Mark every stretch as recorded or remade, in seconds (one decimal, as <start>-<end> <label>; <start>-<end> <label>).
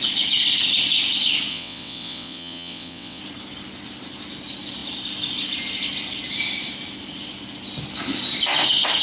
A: 0.0-1.5 recorded; 1.5-3.2 remade; 3.2-9.0 recorded